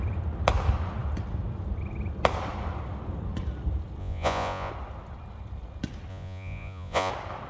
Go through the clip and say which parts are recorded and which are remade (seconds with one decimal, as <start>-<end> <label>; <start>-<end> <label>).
0.0-4.0 recorded; 4.0-4.7 remade; 4.7-6.1 recorded; 6.1-7.1 remade; 7.1-7.5 recorded